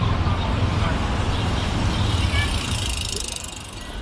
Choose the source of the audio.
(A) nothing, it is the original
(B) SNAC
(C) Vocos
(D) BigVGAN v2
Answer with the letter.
A